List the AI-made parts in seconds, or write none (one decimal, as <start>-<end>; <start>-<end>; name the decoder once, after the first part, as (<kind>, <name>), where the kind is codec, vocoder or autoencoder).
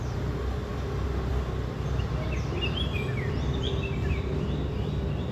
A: none